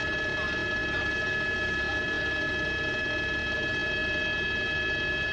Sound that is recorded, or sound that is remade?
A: recorded